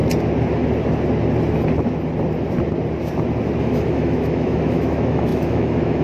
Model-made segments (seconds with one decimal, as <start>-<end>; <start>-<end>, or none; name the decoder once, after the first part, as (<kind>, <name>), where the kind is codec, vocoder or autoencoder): 3.6-6.0 (autoencoder, DAC-VAE)